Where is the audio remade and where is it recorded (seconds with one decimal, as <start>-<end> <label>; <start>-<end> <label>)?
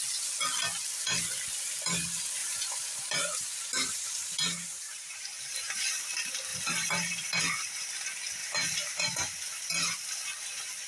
0.0-2.4 recorded; 2.4-5.9 remade; 5.9-6.5 recorded; 6.5-7.4 remade; 7.4-8.4 recorded; 8.4-9.0 remade; 9.0-10.9 recorded